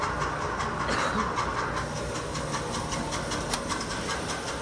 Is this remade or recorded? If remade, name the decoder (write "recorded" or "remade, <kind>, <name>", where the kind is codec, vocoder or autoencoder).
recorded